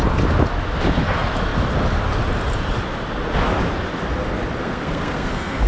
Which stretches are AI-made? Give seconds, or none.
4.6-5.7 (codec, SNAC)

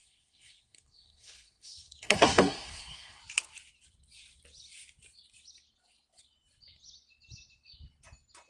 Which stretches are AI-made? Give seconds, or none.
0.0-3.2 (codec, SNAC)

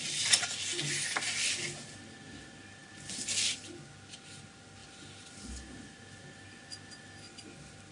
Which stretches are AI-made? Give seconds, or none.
none

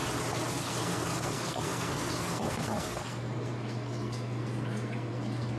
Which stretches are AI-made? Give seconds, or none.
0.5-5.6 (codec, SNAC)

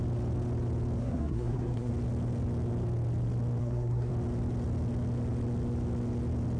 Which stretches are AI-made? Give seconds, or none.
1.0-1.9 (codec, SNAC); 3.6-4.1

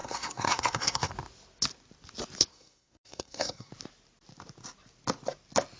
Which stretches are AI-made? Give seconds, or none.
0.0-1.1 (codec, SNAC); 2.5-3.7